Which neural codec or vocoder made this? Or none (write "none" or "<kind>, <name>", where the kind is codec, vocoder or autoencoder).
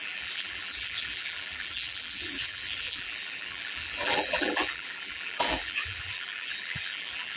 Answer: vocoder, BigVGAN v2